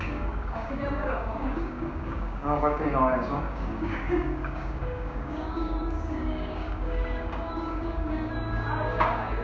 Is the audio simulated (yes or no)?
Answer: yes